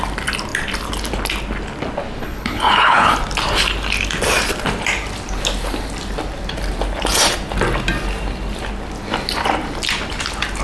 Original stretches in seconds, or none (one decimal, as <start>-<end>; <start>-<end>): 0.0-2.2; 3.1-10.6